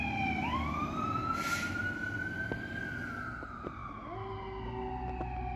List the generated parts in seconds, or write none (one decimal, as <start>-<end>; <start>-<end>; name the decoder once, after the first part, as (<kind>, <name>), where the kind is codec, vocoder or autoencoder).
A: 0.0-1.2 (vocoder, BigVGAN v2); 2.6-3.8